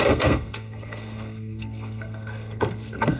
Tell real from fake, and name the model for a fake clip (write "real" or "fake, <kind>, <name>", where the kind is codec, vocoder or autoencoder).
fake, codec, SNAC